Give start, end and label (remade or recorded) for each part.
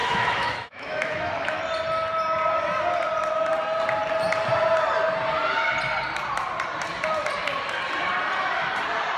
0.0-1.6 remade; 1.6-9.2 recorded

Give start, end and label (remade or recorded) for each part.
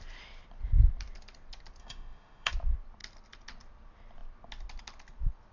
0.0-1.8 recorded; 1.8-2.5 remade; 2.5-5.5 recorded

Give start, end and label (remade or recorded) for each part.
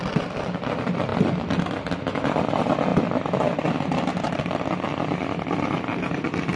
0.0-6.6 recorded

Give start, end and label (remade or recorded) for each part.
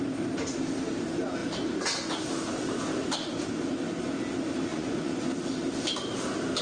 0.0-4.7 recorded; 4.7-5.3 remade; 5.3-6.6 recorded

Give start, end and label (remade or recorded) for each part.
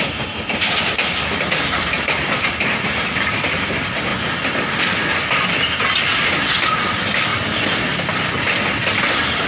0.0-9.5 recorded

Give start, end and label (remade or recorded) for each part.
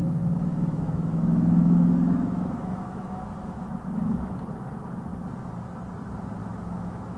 0.0-4.3 remade; 4.3-6.4 recorded; 6.4-7.2 remade